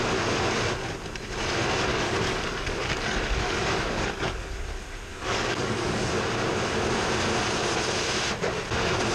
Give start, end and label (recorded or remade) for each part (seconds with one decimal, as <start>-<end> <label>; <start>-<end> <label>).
0.0-1.9 recorded; 1.9-4.5 remade; 4.5-5.1 recorded; 5.1-6.1 remade; 6.1-9.1 recorded